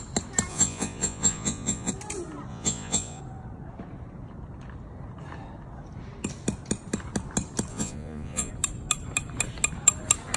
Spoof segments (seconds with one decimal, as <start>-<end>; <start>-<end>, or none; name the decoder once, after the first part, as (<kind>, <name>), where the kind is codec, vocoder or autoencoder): 0.5-1.9 (vocoder, Vocos); 2.5-3.2; 7.7-8.5